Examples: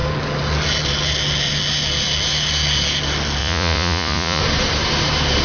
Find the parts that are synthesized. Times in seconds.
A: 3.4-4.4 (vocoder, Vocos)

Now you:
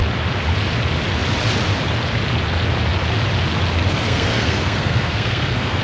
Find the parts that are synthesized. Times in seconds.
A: 3.9-5.8 (codec, SNAC)

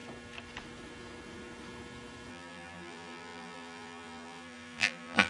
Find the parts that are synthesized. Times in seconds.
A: 2.3-5.3 (vocoder, BigVGAN v2)

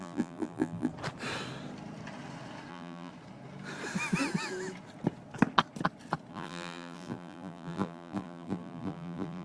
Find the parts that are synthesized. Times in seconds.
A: 0.0-0.9 (vocoder, BigVGAN v2); 2.7-3.1; 6.3-9.4

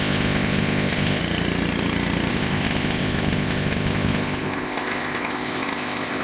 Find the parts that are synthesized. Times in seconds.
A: 0.0-1.2 (codec, ZipCodec); 2.3-6.2

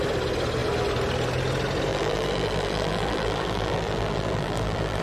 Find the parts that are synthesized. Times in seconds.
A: 1.9-5.0 (vocoder, BigVGAN v2)

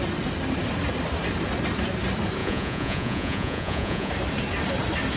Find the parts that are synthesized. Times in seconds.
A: 2.4-4.1 (vocoder, Vocos)

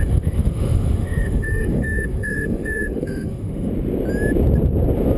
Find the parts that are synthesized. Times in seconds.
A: 0.0-3.7 (autoencoder, DAC-VAE)